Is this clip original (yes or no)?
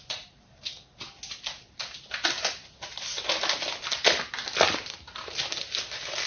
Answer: yes